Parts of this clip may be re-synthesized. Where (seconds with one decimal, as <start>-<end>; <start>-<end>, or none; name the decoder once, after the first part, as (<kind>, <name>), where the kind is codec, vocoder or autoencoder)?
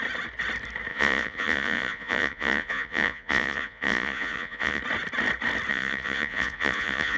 0.9-4.8 (vocoder, Vocos); 5.7-7.2